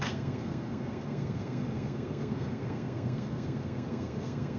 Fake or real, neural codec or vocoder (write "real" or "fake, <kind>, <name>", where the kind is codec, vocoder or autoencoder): fake, codec, SNAC